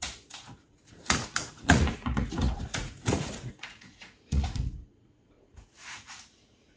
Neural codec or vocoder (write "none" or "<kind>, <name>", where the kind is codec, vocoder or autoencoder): vocoder, Vocos